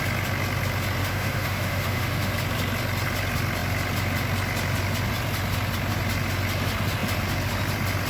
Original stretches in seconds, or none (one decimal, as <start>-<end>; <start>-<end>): 0.0-1.0; 2.3-8.1